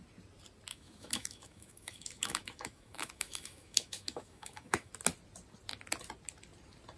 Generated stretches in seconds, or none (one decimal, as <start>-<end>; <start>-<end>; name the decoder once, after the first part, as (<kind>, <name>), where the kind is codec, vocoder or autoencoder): 0.7-4.9 (autoencoder, DAC-VAE)